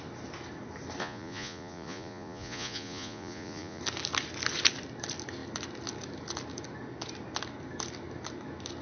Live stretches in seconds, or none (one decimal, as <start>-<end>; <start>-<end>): 0.0-1.0; 3.8-8.8